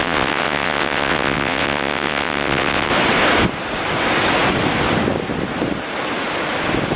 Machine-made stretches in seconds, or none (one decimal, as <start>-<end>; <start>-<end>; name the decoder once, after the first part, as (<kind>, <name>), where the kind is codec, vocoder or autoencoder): 0.0-2.9 (vocoder, WaveNeXt)

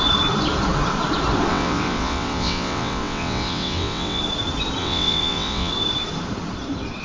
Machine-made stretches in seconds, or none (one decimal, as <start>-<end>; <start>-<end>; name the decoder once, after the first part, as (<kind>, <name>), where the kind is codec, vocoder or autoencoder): 1.5-4.2 (vocoder, WaveNeXt); 4.8-5.7

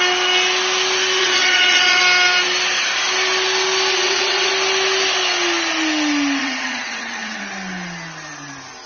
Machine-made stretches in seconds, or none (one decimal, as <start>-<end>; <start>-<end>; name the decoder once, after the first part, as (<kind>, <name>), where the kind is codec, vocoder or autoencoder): 1.2-2.0 (vocoder, WaveNeXt); 3.9-4.5; 6.4-7.4

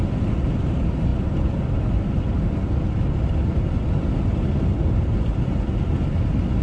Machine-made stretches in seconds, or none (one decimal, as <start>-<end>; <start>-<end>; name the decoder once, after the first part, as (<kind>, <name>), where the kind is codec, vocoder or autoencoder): none

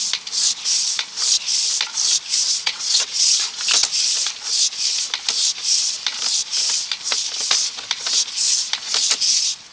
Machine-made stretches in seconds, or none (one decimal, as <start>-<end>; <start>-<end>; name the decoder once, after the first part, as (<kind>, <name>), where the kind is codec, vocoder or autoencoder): 2.4-3.4 (vocoder, WaveNeXt)